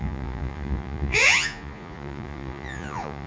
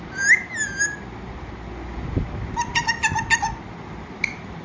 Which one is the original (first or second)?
second